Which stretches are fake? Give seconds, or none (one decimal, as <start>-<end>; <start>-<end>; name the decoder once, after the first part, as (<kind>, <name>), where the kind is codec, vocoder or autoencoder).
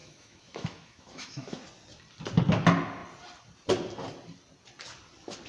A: 0.0-1.6 (autoencoder, DAC-VAE)